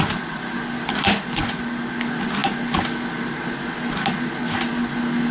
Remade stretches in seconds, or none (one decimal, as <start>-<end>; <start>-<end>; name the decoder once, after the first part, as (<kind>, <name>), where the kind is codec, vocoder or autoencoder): none